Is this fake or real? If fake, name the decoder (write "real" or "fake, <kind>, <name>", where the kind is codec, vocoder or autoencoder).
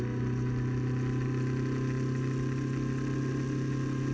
real